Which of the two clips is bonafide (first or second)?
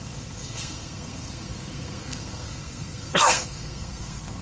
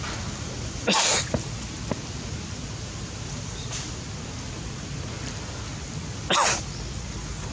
second